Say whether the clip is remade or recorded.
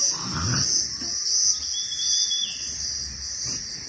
recorded